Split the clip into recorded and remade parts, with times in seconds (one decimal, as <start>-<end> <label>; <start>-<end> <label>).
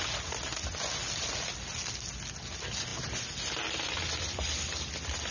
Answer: 0.0-5.3 recorded